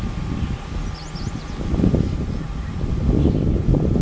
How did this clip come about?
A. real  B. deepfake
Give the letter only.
A